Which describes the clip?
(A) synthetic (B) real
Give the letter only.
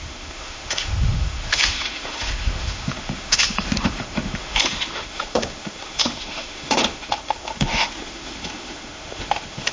A